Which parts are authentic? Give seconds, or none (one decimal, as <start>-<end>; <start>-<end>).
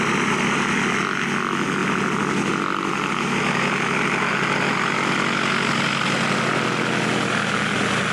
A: 0.0-8.1